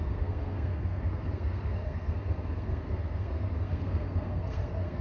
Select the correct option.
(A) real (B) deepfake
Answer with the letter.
B